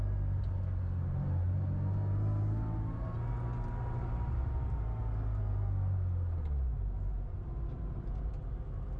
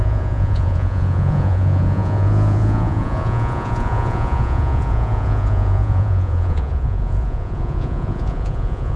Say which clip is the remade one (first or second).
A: second